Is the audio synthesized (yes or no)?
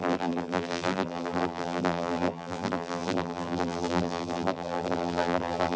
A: yes